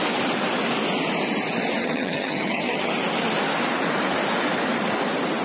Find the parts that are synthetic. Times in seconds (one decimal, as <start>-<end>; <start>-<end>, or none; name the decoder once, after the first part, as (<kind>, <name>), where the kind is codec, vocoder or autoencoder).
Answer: 1.8-2.9 (vocoder, HiFi-GAN)